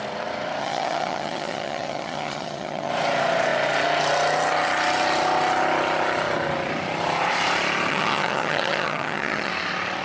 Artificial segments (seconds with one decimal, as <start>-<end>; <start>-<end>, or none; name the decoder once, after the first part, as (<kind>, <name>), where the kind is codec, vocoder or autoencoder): 0.6-2.9 (vocoder, HiFi-GAN); 7.9-9.5